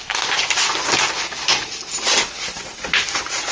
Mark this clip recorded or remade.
remade